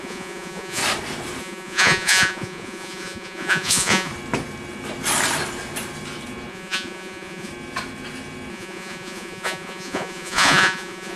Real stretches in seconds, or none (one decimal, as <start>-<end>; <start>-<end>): 0.8-1.4; 4.1-6.5; 7.5-8.5